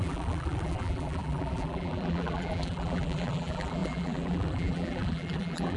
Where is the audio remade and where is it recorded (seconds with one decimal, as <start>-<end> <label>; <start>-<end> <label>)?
0.0-5.8 remade